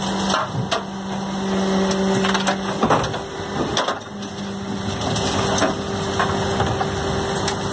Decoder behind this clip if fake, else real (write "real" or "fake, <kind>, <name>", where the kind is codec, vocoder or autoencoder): real